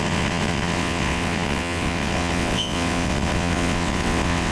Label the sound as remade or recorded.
remade